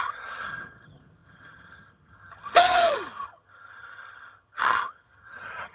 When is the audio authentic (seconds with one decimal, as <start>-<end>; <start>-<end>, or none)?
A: none